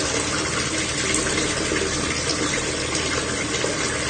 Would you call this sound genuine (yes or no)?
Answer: no